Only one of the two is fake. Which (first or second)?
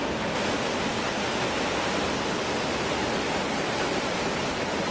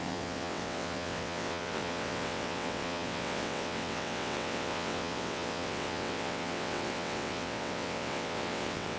second